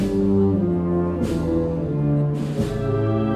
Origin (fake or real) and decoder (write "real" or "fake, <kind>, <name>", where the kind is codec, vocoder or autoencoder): real